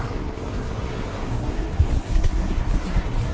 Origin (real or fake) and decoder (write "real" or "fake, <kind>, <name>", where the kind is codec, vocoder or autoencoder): fake, codec, SNAC